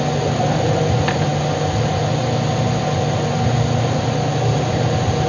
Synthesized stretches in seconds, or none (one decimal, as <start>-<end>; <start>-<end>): none